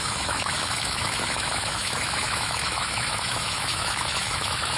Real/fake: fake